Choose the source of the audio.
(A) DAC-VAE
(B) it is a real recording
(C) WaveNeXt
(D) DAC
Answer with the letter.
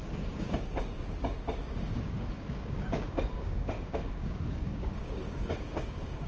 D